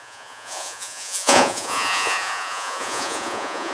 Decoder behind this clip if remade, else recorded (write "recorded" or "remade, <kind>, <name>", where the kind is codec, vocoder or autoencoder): remade, vocoder, Vocos